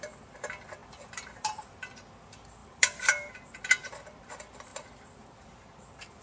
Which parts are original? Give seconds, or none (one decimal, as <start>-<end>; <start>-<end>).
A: 0.0-0.8; 1.9-2.6; 3.3-3.8; 4.3-6.2